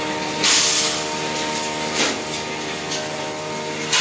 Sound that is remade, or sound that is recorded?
recorded